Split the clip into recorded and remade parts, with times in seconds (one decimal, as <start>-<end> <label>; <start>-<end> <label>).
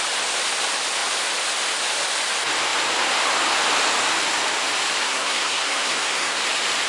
0.0-5.0 recorded; 5.0-6.4 remade; 6.4-6.9 recorded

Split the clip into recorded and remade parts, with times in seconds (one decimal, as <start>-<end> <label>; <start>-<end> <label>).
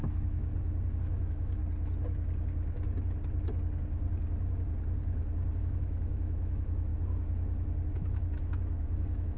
0.0-0.5 remade; 0.5-1.0 recorded; 1.0-1.6 remade; 1.6-5.6 recorded; 5.6-6.9 remade; 6.9-7.9 recorded; 7.9-9.4 remade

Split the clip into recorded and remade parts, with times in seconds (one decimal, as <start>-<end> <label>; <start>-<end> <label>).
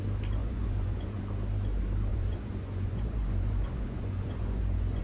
0.0-0.4 recorded; 0.4-1.2 remade; 1.2-2.1 recorded; 2.1-5.0 remade